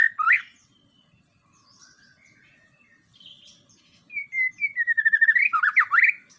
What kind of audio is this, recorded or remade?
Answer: recorded